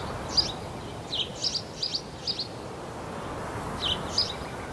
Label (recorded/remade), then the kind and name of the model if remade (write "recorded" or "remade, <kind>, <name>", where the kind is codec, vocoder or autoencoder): recorded